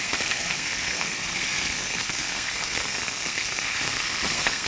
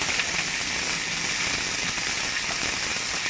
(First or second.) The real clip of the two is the second